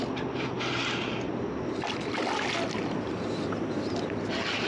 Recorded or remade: recorded